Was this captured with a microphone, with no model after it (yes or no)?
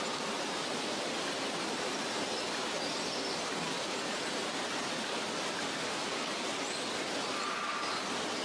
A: yes